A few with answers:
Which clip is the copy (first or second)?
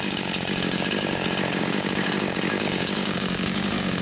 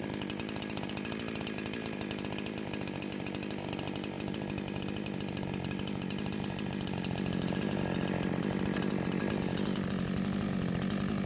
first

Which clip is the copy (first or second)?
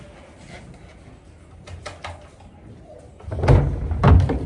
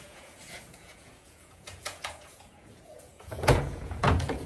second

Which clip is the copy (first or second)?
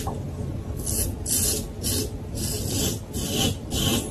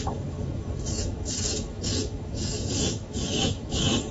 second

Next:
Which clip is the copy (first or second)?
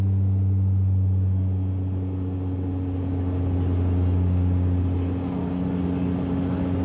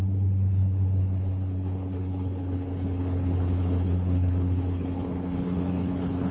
second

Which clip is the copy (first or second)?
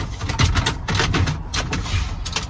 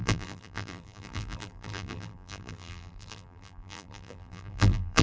second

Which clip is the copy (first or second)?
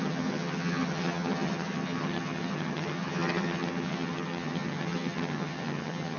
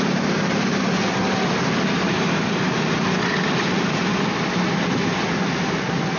first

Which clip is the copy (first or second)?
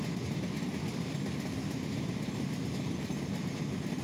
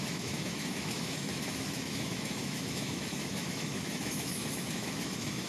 second